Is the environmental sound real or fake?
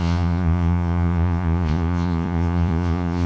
fake